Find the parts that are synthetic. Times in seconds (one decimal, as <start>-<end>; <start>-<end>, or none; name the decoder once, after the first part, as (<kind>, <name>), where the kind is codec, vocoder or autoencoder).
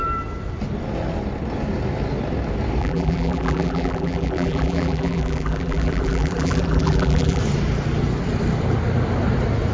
2.8-7.4 (vocoder, BigVGAN v2)